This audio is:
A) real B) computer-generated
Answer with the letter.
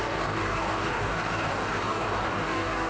B